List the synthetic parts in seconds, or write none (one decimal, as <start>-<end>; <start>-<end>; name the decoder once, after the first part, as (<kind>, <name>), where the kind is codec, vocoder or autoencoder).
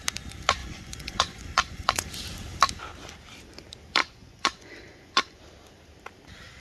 0.6-2.1 (vocoder, Vocos); 4.0-5.4